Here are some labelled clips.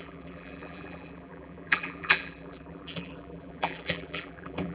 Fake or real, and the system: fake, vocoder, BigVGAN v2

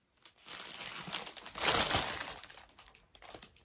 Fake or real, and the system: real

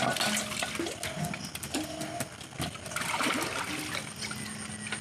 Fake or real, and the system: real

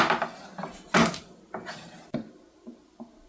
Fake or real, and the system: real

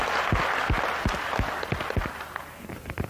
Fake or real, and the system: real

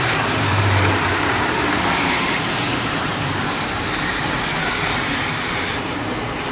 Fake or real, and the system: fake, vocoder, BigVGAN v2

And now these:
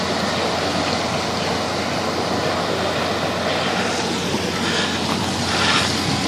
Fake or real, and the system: real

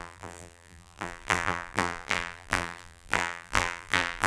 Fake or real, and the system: fake, vocoder, BigVGAN v2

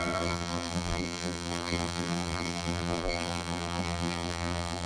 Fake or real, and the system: fake, vocoder, BigVGAN v2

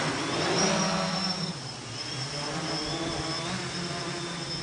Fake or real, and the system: real